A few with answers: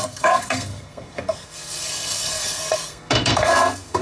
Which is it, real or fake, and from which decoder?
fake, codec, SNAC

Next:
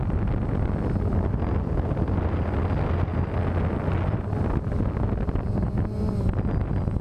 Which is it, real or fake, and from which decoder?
real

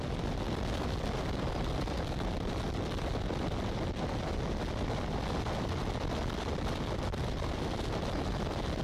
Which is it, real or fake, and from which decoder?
real